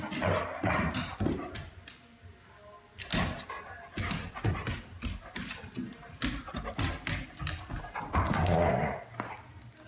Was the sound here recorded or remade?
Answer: recorded